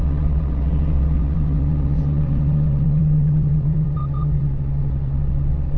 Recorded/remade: remade